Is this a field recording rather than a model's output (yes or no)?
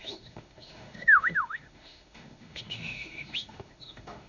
no